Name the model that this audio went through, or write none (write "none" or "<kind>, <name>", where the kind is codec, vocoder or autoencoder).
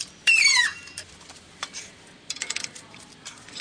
vocoder, BigVGAN v2